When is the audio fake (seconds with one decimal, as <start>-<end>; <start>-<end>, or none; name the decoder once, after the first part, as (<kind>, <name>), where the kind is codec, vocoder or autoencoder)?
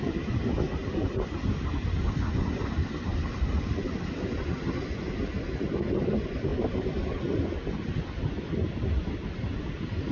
none